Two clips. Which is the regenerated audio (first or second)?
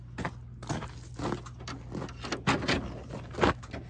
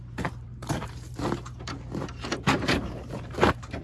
second